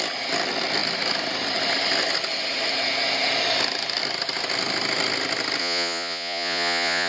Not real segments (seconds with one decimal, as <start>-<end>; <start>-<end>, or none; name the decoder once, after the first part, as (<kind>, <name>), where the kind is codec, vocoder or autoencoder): 5.6-7.1 (vocoder, Vocos)

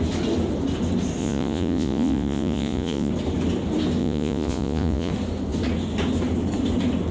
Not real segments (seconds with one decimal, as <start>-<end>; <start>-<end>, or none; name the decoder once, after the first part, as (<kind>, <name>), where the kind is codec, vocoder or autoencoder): 1.2-3.1 (vocoder, Vocos); 4.0-5.1